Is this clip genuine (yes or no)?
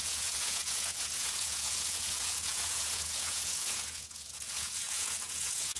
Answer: no